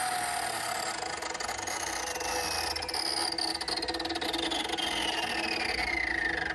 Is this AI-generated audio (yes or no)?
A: no